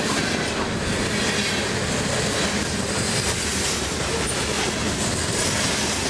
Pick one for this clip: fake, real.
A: real